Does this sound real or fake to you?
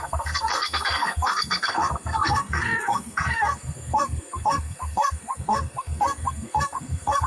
fake